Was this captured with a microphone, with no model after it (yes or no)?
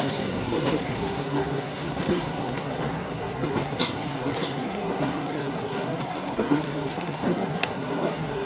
no